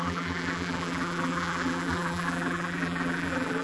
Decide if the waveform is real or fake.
fake